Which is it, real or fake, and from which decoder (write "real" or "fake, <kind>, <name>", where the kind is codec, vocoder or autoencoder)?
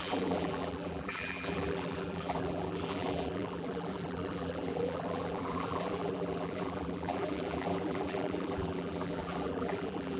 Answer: fake, vocoder, BigVGAN v2